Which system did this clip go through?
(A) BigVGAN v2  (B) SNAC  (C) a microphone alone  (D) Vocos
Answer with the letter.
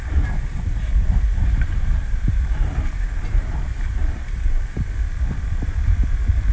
A